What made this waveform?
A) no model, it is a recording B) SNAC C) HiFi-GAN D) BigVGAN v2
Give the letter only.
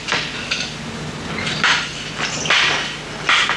A